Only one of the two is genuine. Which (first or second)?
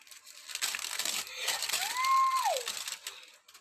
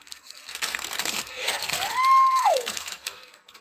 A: first